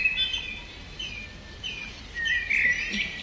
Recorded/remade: recorded